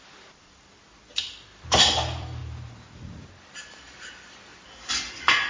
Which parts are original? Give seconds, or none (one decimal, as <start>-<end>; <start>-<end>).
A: none